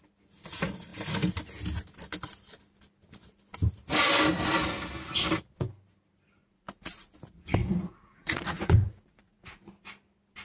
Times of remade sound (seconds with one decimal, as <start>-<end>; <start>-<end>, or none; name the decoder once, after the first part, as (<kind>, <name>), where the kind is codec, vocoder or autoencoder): 6.4-7.1 (vocoder, Vocos); 7.6-9.6